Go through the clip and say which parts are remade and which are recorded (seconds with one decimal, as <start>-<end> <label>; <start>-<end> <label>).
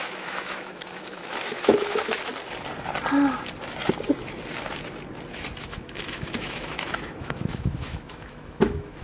0.0-2.3 remade; 2.3-5.6 recorded; 5.6-9.0 remade